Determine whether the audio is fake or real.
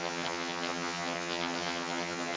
fake